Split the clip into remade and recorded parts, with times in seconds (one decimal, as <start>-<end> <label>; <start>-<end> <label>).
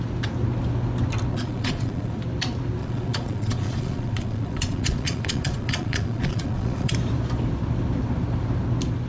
0.0-1.3 recorded; 1.3-2.2 remade; 2.2-2.8 recorded; 2.8-6.9 remade; 6.9-9.1 recorded